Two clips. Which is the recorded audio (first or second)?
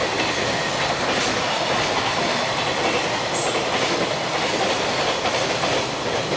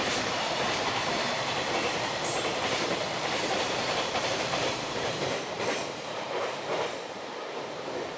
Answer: first